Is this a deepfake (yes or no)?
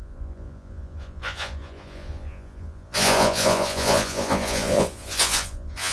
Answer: yes